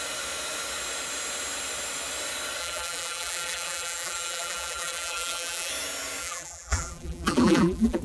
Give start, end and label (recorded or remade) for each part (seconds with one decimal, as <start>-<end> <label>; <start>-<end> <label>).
0.0-2.6 recorded; 2.6-5.7 remade; 5.7-6.2 recorded; 6.2-8.0 remade